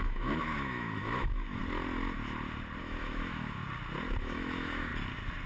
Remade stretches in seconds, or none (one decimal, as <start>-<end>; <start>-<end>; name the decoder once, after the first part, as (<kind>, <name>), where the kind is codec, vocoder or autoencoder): 0.0-1.6 (autoencoder, DAC-VAE); 2.8-3.6; 4.2-4.9